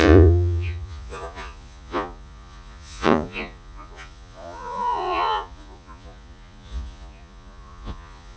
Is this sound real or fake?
fake